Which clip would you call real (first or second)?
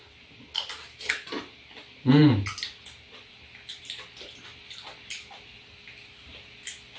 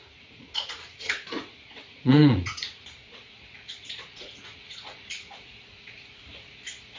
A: first